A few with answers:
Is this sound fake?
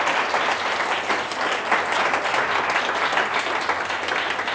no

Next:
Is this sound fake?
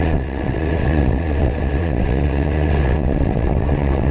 yes